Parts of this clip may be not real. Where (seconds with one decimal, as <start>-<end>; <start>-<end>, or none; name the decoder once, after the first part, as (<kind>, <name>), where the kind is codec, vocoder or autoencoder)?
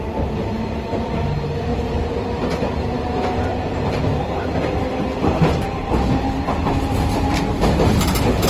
1.7-2.2 (vocoder, BigVGAN v2)